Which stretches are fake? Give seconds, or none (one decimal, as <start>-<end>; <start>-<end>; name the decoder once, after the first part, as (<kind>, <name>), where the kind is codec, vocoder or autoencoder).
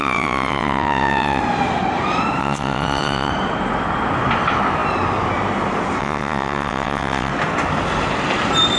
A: 0.0-1.4 (vocoder, WaveNeXt); 2.4-3.3; 6.0-7.3